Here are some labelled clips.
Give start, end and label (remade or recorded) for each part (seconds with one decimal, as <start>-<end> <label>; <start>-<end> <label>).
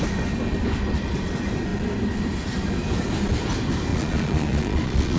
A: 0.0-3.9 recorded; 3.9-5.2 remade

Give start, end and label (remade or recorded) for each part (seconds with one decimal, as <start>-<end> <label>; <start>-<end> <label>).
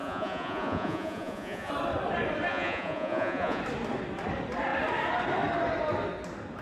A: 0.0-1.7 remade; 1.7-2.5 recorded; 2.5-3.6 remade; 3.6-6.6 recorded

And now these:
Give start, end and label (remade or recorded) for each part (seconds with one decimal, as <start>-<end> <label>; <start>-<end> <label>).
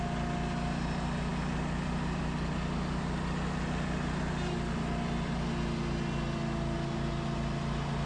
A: 0.0-8.1 recorded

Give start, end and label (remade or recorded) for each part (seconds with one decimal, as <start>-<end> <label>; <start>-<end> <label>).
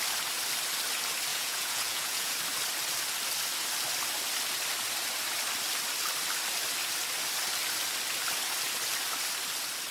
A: 0.0-1.3 recorded; 1.3-2.3 remade; 2.3-9.9 recorded